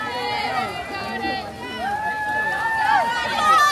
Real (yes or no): yes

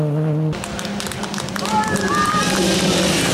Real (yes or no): yes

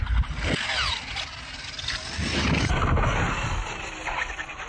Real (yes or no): yes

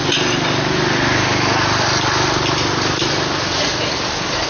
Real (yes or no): yes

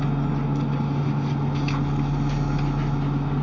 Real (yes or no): yes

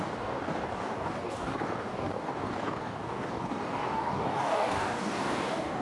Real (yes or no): no